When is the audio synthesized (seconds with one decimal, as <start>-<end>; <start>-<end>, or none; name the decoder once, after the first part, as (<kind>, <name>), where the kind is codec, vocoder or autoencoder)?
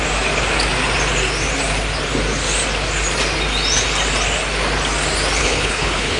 5.4-6.2 (codec, HILCodec)